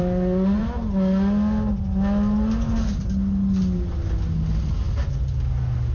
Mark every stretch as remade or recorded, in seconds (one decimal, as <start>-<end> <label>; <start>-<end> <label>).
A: 0.0-5.9 recorded